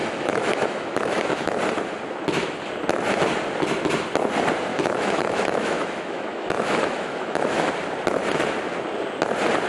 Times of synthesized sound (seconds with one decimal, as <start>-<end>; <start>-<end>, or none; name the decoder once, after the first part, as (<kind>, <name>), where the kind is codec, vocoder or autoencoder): 0.0-1.6 (autoencoder, DAC-VAE); 4.7-7.7